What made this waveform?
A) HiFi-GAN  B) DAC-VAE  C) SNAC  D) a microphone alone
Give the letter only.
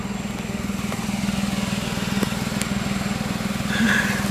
D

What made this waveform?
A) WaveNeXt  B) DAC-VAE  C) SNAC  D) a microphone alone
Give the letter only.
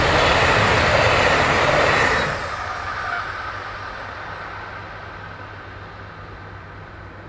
D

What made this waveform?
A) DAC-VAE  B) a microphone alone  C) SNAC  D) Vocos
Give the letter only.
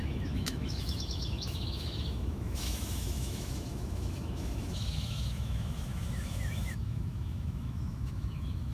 A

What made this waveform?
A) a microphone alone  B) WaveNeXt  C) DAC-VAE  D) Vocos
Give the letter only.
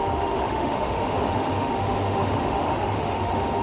C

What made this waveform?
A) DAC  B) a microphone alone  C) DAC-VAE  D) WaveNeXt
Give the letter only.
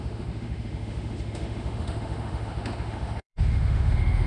C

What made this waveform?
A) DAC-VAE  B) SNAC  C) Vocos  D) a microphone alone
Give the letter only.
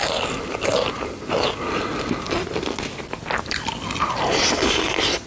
D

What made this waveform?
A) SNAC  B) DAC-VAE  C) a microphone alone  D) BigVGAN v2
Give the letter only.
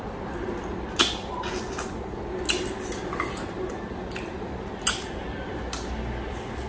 C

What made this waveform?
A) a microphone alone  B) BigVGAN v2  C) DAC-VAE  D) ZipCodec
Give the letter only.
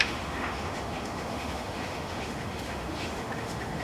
C